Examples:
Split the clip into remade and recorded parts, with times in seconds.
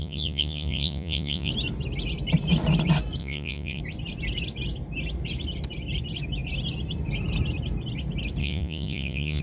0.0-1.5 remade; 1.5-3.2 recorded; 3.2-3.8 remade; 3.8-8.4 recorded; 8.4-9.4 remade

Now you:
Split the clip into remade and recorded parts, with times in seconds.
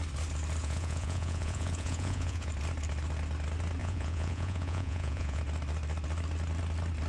0.0-0.6 recorded; 0.6-2.5 remade; 2.5-3.8 recorded; 3.8-5.4 remade; 5.4-7.1 recorded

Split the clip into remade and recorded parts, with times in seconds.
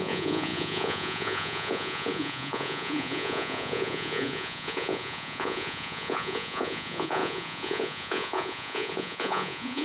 0.0-9.8 remade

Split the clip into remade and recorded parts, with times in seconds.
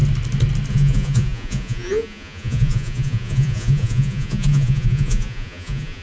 0.0-0.7 recorded; 0.7-6.0 remade